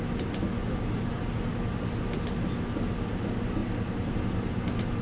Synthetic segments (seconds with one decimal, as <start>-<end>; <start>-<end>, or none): none